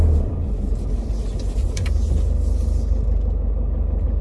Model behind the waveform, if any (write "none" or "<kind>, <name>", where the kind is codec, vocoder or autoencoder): none